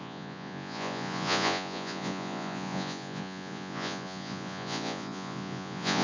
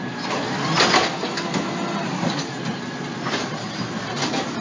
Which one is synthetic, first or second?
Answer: first